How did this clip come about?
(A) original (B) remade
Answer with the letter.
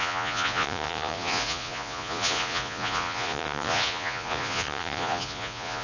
B